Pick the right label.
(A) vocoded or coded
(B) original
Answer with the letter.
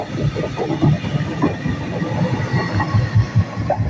B